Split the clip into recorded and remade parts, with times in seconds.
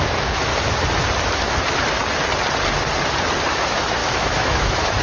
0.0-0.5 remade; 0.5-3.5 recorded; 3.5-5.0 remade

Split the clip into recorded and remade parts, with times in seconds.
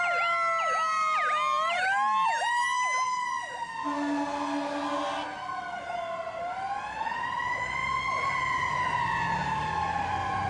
0.0-10.5 recorded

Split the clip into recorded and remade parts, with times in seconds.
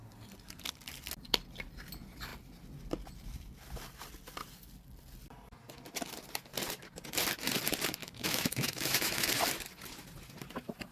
0.0-8.0 recorded; 8.0-9.3 remade; 9.3-10.9 recorded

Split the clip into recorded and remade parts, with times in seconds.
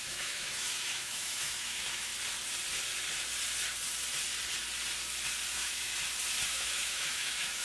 0.0-2.1 remade; 2.1-5.5 recorded; 5.5-5.9 remade; 5.9-6.5 recorded; 6.5-7.6 remade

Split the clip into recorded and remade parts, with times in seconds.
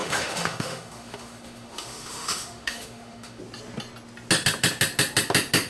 0.0-3.4 remade; 3.4-5.7 recorded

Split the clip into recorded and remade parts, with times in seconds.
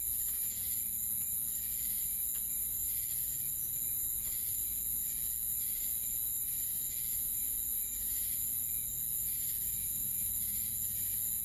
0.0-9.8 recorded; 9.8-10.3 remade; 10.3-11.4 recorded